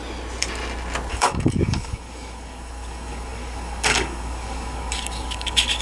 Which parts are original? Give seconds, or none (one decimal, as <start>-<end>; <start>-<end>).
0.0-1.1